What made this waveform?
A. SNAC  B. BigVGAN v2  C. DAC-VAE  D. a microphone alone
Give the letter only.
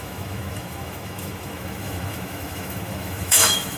C